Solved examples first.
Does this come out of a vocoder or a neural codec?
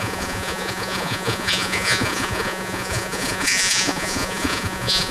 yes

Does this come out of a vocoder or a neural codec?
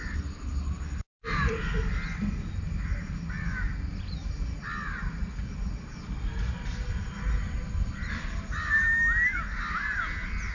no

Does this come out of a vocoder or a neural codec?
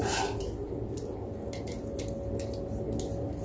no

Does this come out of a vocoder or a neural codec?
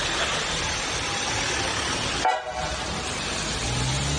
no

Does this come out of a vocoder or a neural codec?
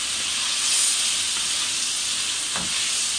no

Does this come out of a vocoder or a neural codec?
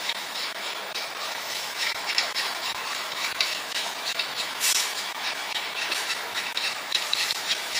yes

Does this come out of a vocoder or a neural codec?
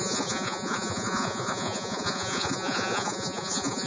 yes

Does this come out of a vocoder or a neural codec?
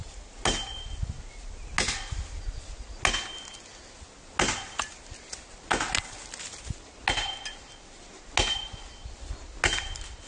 no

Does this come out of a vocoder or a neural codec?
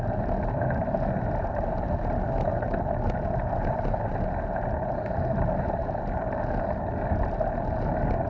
no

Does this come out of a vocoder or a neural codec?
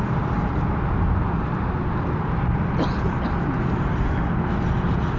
no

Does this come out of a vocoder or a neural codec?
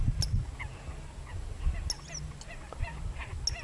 no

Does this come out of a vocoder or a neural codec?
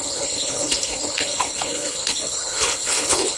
yes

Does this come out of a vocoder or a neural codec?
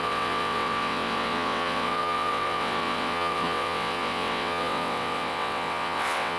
yes